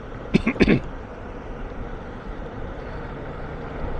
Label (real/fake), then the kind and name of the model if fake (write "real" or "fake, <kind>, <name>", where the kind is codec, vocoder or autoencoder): fake, vocoder, BigVGAN v2